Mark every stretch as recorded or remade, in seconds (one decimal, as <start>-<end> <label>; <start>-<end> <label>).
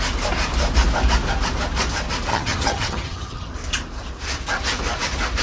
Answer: 0.0-2.3 recorded; 2.3-3.5 remade; 3.5-5.4 recorded